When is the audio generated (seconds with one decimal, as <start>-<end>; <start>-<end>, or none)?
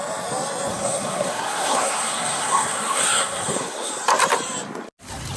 0.7-3.9